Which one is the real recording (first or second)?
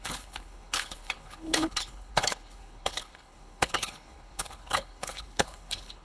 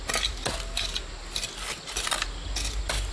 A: second